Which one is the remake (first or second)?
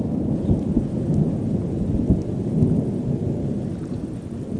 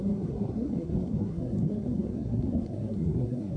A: second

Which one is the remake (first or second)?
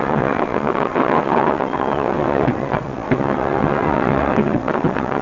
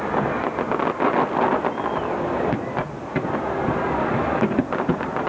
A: first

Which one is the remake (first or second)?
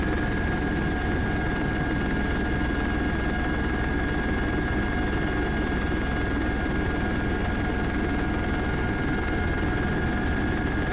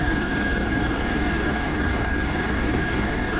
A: second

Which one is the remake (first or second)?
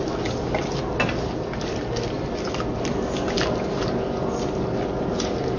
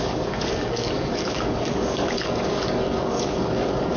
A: second